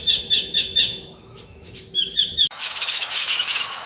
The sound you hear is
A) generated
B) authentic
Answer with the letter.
A